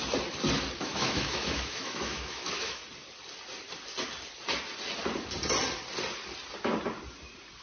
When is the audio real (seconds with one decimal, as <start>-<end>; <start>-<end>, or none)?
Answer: 0.0-0.8; 2.8-7.6